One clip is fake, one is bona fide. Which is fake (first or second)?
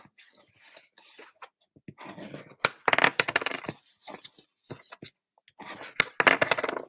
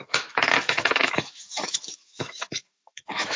second